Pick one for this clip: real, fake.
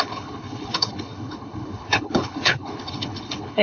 fake